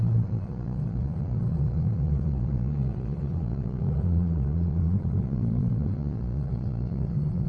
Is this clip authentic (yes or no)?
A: no